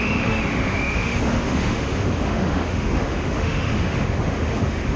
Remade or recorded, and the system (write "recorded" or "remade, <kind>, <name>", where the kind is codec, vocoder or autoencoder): remade, autoencoder, DAC-VAE